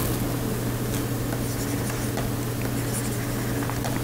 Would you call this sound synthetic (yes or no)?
no